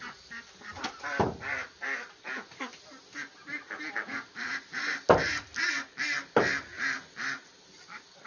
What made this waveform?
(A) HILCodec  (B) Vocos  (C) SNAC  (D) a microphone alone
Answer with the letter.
D